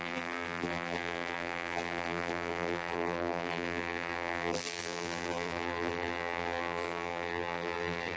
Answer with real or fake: fake